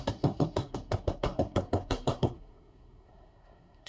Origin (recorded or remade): remade